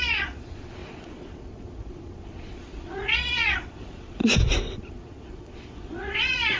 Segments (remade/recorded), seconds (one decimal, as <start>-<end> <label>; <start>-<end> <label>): 0.0-4.2 remade; 4.2-4.7 recorded; 4.7-6.6 remade